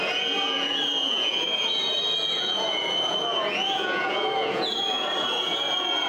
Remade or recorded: remade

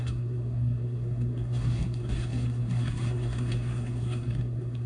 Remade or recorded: remade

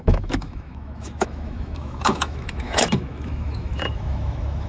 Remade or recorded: remade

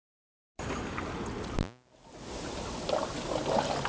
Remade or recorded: recorded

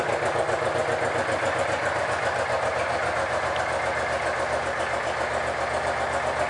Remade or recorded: recorded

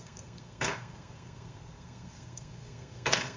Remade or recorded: remade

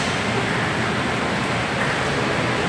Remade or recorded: recorded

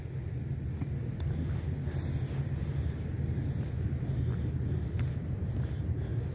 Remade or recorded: recorded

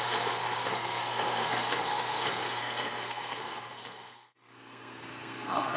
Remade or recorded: remade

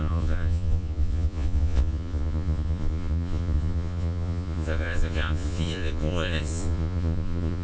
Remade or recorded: remade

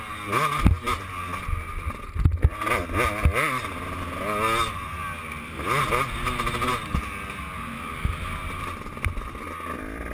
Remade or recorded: recorded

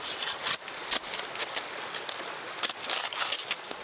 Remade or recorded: recorded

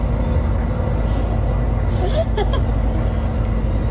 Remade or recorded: recorded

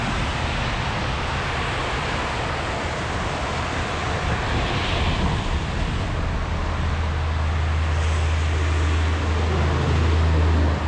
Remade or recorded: recorded